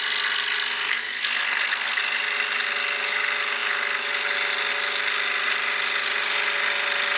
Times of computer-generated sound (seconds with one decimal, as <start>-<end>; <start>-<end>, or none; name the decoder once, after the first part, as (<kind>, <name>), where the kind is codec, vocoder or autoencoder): 0.7-2.0 (codec, SNAC)